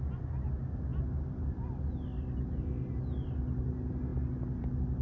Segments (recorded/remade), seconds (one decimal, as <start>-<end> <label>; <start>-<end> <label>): 0.0-5.0 recorded